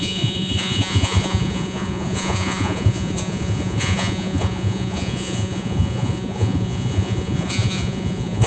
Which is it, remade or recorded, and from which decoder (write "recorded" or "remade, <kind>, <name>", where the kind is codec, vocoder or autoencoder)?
remade, vocoder, Vocos